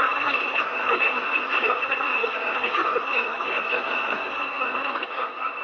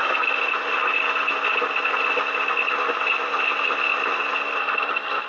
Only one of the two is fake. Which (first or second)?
first